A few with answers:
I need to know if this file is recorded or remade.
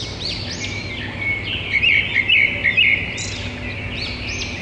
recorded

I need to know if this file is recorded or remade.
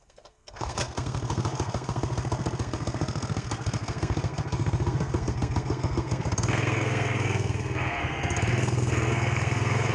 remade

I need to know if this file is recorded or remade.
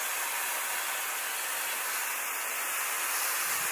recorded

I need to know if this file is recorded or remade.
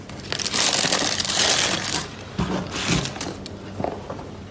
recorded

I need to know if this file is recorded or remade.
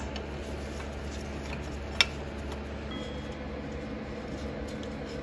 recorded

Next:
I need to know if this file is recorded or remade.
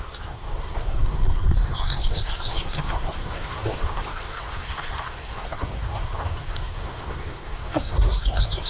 remade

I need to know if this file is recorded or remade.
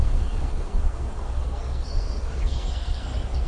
remade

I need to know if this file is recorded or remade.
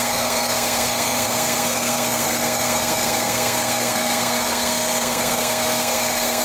remade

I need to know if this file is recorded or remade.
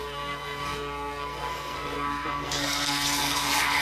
remade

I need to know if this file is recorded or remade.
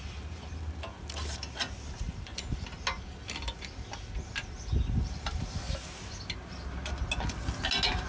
recorded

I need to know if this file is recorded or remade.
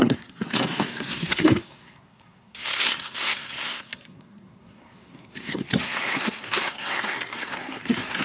remade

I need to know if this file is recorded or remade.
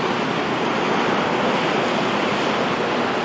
recorded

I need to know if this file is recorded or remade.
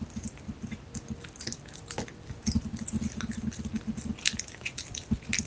recorded